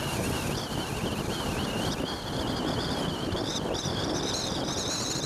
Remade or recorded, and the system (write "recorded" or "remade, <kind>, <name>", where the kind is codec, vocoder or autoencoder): recorded